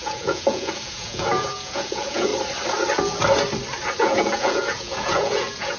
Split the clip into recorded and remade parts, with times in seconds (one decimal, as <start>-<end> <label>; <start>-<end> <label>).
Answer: 0.0-2.3 remade; 2.3-4.0 recorded; 4.0-5.8 remade